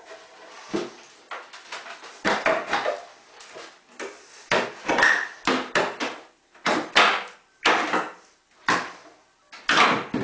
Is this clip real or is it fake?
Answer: real